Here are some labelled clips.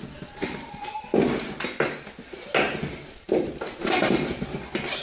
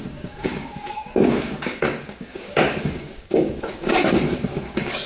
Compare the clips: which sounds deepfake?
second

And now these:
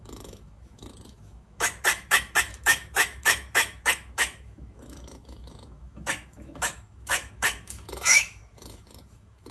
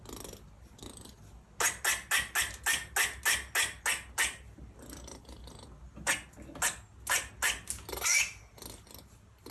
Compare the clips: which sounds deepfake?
first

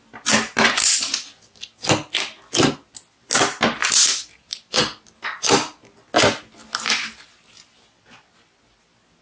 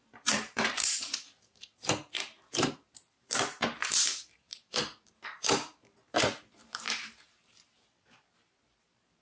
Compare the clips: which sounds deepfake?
second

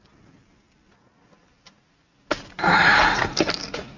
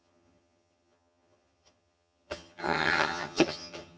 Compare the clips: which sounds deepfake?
second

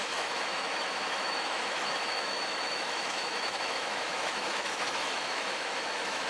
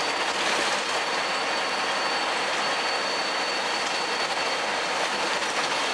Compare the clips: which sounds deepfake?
first